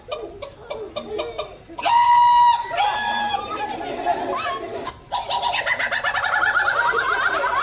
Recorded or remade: recorded